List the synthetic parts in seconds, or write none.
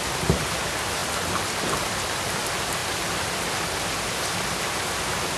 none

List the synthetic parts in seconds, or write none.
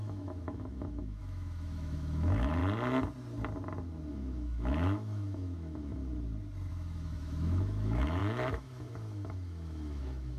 0.0-2.6 (autoencoder, DAC-VAE); 4.1-6.0; 6.7-10.4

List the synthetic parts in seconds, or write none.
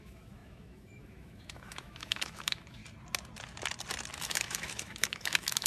0.0-2.8 (autoencoder, DAC-VAE); 4.1-5.7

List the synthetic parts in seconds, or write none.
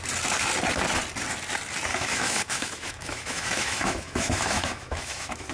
1.9-5.5 (autoencoder, DAC-VAE)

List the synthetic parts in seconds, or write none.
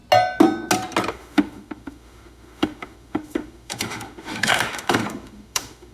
1.1-5.9 (autoencoder, DAC-VAE)